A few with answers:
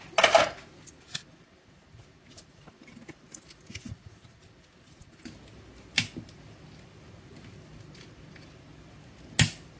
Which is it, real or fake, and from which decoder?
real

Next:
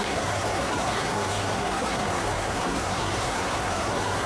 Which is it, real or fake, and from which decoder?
fake, codec, SNAC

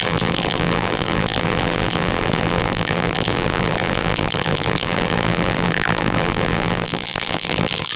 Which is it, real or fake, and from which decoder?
fake, vocoder, BigVGAN v2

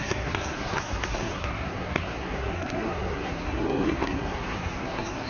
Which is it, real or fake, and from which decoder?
fake, codec, SNAC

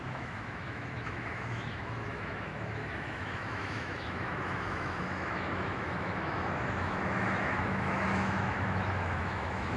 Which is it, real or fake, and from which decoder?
fake, autoencoder, DAC-VAE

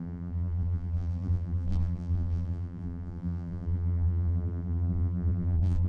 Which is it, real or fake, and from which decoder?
fake, vocoder, BigVGAN v2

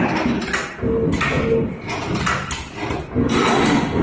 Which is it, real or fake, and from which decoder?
real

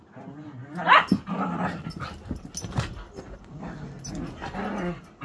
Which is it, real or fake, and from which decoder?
real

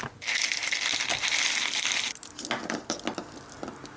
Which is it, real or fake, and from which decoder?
real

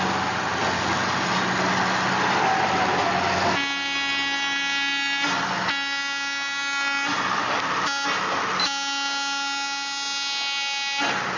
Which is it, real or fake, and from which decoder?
real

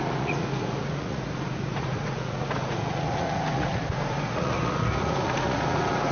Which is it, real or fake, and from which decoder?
fake, vocoder, Vocos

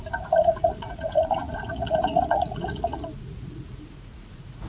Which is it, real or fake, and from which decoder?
fake, vocoder, Vocos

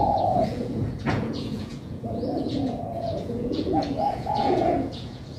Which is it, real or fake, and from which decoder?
fake, vocoder, Vocos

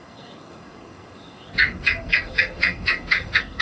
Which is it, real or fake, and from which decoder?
fake, codec, SNAC